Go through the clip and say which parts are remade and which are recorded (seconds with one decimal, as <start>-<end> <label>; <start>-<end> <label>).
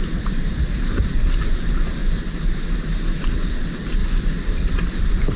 0.0-2.0 remade; 2.0-3.2 recorded; 3.2-4.0 remade; 4.0-4.9 recorded; 4.9-5.4 remade